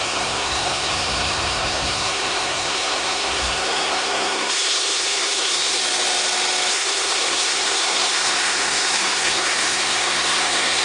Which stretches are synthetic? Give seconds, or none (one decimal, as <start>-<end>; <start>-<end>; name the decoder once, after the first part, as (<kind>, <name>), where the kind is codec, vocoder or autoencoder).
0.0-5.8 (codec, SNAC); 6.7-10.8